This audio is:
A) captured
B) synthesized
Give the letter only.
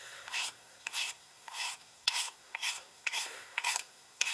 B